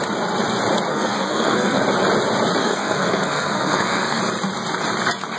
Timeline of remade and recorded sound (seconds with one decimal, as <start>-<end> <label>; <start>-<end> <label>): 0.0-0.9 recorded; 0.9-1.8 remade; 1.8-2.6 recorded; 2.6-4.2 remade; 4.2-5.4 recorded

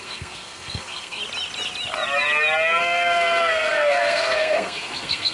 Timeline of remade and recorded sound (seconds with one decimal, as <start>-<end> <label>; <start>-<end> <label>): 0.0-1.2 remade; 1.2-2.8 recorded; 2.8-5.3 remade